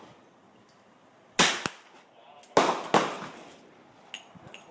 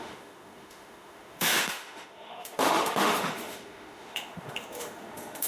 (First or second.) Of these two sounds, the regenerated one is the second